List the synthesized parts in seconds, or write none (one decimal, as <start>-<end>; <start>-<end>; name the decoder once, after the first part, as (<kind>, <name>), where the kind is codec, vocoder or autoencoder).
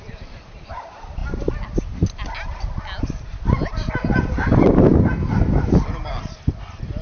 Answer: none